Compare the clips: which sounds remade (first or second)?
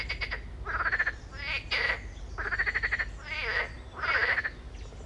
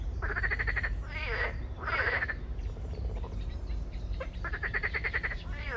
second